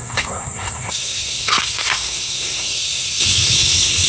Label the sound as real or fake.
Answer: fake